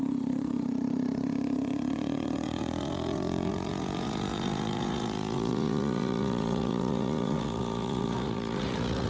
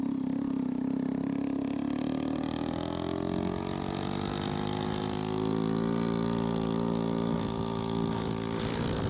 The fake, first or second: first